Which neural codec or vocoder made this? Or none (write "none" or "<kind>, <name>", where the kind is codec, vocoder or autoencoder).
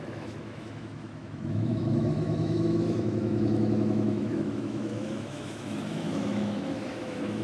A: autoencoder, DAC-VAE